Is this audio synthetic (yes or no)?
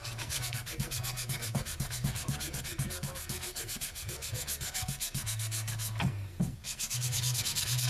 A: yes